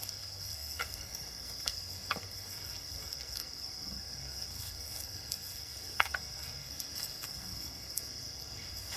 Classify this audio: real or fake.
fake